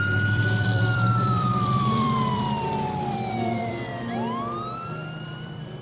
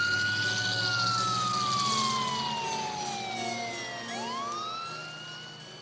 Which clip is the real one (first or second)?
second